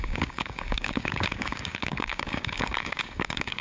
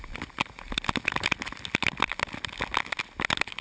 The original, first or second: second